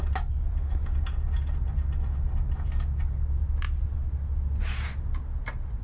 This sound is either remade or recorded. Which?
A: recorded